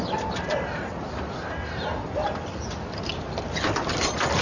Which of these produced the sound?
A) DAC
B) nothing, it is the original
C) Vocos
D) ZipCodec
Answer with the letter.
B